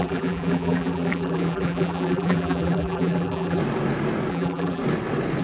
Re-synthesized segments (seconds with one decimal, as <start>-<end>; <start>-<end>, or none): 0.0-3.6; 4.3-4.8